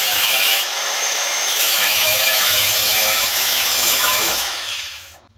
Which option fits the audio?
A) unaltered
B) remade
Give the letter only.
B